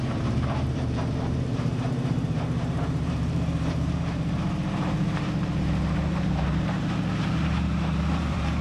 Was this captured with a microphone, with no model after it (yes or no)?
no